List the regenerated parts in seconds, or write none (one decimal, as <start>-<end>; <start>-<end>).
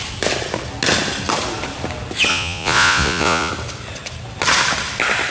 2.3-3.5